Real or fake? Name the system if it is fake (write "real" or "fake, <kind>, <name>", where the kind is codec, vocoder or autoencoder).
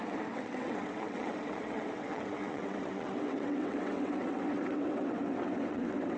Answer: fake, vocoder, WaveNeXt